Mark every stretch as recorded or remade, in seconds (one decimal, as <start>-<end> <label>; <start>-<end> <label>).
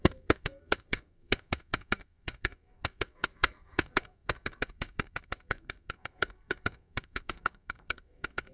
0.0-8.5 remade